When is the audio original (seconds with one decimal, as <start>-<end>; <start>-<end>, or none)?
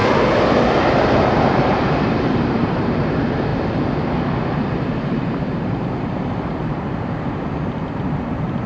0.0-0.6; 3.5-4.6